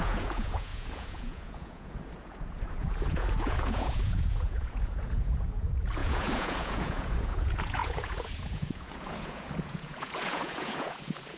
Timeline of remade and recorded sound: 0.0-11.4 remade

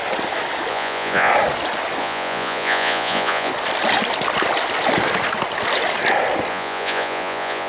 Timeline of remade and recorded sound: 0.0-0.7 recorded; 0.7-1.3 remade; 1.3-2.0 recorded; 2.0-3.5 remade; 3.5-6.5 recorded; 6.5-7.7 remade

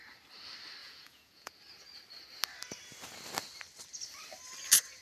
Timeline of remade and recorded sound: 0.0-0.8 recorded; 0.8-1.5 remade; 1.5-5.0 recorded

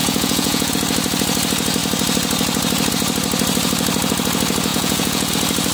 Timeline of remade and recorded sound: 0.0-0.7 remade; 0.7-4.7 recorded; 4.7-5.3 remade; 5.3-5.7 recorded

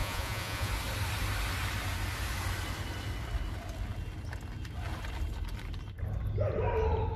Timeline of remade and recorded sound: 0.0-0.7 remade; 0.7-7.2 recorded

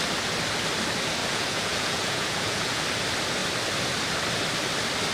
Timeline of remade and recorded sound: 0.0-1.2 recorded; 1.2-2.8 remade; 2.8-5.1 recorded

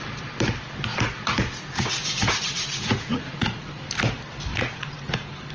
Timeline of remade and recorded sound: 0.0-0.9 recorded; 0.9-3.6 remade; 3.6-4.5 recorded; 4.5-5.0 remade; 5.0-5.5 recorded

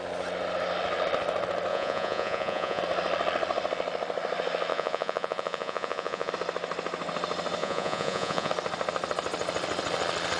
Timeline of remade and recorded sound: 0.0-1.7 recorded; 1.7-2.8 remade; 2.8-4.7 recorded; 4.7-6.3 remade; 6.3-7.6 recorded; 7.6-8.5 remade; 8.5-10.4 recorded